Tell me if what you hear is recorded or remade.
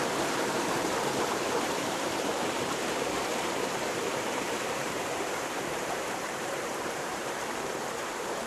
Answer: remade